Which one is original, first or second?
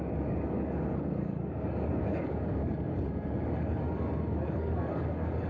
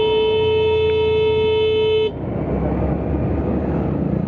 second